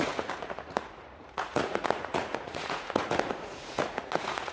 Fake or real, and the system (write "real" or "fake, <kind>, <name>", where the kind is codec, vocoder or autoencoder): fake, vocoder, Vocos